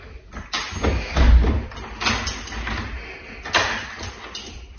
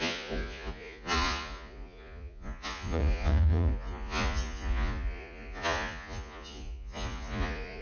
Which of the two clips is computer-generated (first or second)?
second